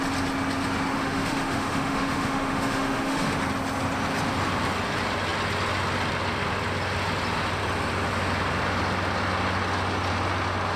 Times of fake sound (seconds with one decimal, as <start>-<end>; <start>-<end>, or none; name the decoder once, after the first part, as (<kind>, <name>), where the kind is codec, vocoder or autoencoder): 0.9-3.4 (autoencoder, DAC-VAE)